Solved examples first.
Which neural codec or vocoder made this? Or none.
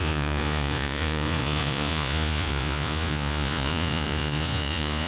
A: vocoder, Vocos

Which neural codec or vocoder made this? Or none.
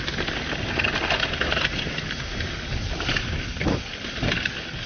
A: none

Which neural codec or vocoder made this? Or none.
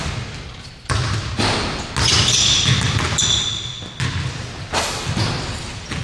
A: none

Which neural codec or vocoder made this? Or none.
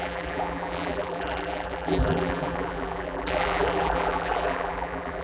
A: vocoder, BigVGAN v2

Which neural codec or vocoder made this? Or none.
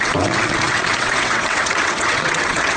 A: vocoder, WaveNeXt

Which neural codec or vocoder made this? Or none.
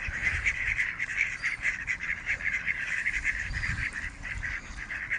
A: vocoder, BigVGAN v2